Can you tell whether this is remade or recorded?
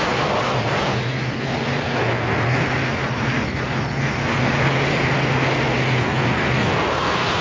recorded